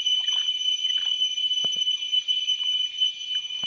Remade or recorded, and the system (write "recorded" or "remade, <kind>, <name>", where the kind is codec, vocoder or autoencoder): remade, vocoder, Vocos